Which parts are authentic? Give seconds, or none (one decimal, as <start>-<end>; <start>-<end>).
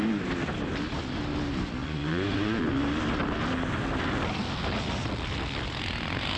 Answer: 0.0-1.8; 2.6-6.4